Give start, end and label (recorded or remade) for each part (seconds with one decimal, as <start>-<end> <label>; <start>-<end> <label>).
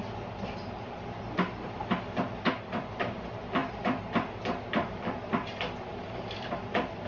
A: 0.0-7.1 recorded